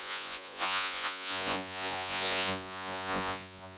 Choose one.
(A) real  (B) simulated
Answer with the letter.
B